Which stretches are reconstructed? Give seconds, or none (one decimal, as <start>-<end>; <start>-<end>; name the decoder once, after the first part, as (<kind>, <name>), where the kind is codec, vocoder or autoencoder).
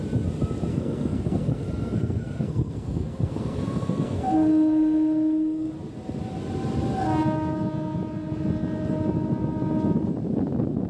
0.7-5.7 (codec, SNAC)